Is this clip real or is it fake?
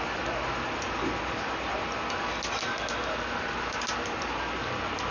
real